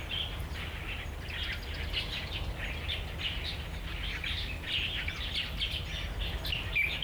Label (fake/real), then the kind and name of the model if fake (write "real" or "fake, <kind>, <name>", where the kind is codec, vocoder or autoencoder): real